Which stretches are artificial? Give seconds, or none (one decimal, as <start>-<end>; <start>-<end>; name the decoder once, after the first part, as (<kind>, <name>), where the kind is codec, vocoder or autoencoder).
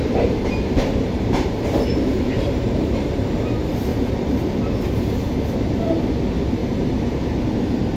0.0-3.4 (vocoder, BigVGAN v2); 3.9-5.8; 6.6-7.2